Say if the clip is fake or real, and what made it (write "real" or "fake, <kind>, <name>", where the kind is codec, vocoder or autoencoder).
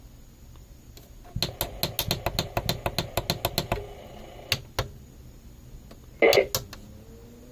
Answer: real